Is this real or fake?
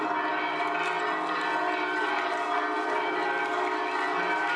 real